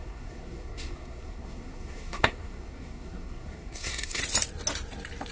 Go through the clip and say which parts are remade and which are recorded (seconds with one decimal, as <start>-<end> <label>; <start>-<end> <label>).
0.0-4.2 remade; 4.2-5.3 recorded